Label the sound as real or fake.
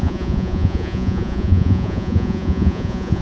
fake